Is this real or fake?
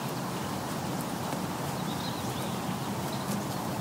real